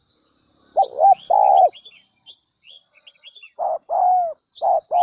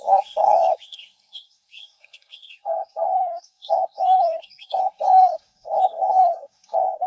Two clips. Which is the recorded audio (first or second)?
first